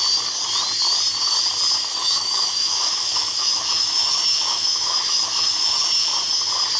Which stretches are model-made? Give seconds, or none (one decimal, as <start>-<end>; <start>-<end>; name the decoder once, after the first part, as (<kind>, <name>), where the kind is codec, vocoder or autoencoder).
2.0-6.1 (autoencoder, DAC-VAE)